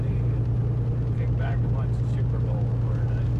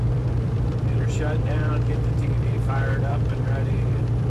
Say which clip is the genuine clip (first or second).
first